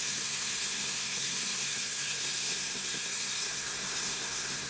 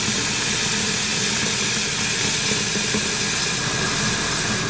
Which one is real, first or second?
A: second